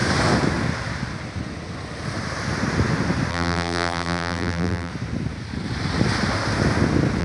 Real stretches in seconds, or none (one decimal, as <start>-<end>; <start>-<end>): 0.0-3.3; 4.9-7.2